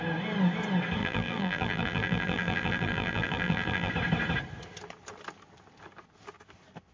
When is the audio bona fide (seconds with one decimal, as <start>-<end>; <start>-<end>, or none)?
0.0-1.0; 3.9-6.9